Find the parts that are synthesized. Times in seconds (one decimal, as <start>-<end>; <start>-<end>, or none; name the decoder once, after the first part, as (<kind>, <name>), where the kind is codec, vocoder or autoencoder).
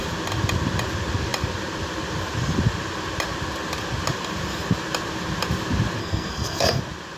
6.0-6.8 (codec, SNAC)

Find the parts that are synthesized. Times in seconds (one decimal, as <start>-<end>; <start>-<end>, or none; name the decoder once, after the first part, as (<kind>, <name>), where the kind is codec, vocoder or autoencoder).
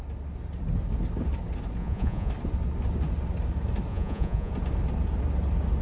1.8-2.3 (vocoder, Vocos); 3.9-4.5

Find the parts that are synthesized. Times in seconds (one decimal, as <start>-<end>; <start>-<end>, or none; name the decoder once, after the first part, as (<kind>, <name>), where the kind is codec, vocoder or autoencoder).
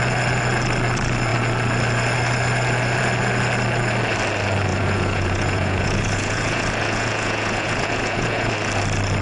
4.7-8.5 (vocoder, Vocos)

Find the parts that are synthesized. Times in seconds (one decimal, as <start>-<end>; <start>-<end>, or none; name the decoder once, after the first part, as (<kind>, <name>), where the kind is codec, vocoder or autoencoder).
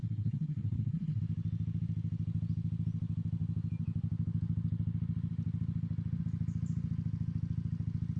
0.0-1.2 (codec, SNAC)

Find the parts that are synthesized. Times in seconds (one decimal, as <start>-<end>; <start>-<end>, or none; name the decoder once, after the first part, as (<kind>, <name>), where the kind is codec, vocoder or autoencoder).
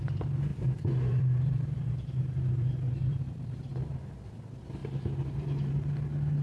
0.5-3.2 (vocoder, BigVGAN v2); 4.8-5.7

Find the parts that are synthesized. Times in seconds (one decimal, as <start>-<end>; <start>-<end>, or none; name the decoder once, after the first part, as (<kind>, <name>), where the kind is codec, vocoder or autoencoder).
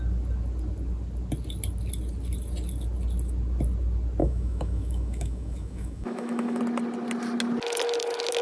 4.2-6.6 (autoencoder, DAC-VAE)